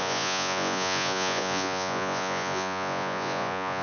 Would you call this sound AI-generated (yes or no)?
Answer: yes